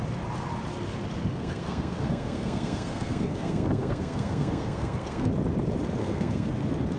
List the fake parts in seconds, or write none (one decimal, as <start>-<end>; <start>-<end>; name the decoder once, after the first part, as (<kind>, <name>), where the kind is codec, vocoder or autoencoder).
1.3-5.3 (codec, SNAC); 6.0-6.5